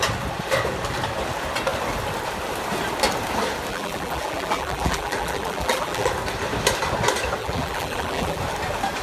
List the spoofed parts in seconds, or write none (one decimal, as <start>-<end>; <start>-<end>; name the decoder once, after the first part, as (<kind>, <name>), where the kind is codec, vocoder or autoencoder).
3.7-6.1 (vocoder, BigVGAN v2); 7.4-8.4